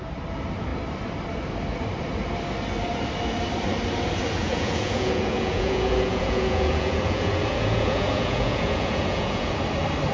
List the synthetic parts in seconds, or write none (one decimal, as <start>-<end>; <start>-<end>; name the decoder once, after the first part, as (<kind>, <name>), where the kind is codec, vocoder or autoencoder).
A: 4.4-9.6 (vocoder, Vocos)